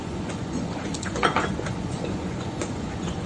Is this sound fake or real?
fake